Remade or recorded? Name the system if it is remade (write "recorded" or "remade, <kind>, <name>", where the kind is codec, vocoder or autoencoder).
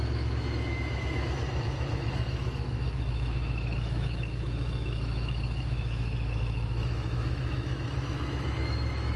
remade, autoencoder, DAC-VAE